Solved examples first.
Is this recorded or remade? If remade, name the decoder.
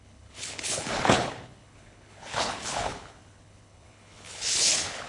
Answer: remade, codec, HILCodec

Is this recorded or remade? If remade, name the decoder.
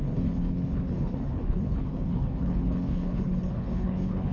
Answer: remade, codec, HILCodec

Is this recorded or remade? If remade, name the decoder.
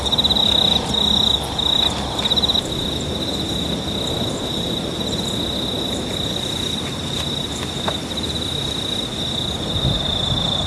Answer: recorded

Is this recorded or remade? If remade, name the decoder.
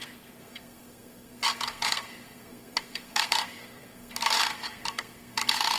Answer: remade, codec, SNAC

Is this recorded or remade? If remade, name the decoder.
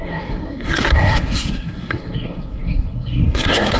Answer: remade, codec, SNAC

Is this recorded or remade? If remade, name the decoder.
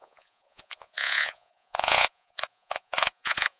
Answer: remade, vocoder, Vocos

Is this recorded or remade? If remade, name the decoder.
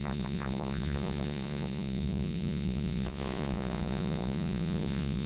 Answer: remade, vocoder, Vocos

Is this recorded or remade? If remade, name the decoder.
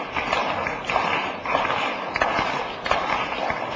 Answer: recorded